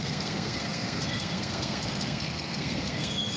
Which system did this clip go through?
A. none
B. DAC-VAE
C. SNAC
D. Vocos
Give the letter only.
C